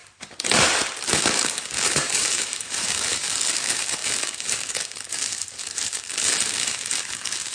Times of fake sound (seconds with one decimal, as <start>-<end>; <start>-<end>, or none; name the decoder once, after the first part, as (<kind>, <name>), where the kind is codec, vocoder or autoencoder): 1.1-7.5 (codec, DAC)